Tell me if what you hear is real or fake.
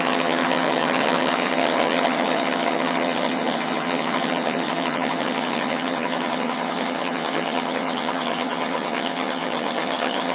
fake